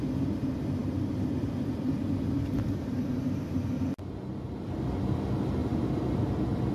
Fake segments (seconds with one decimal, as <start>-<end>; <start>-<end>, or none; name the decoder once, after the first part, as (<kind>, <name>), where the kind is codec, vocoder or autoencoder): none